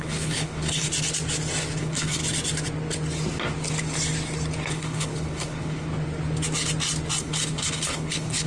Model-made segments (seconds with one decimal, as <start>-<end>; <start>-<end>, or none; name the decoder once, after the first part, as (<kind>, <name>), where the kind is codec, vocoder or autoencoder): 0.0-0.9 (codec, HILCodec); 1.8-2.2; 4.7-5.9; 7.2-8.5